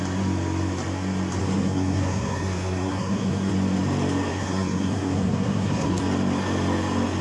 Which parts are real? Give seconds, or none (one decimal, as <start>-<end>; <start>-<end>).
0.0-1.4; 3.5-4.3; 6.0-7.2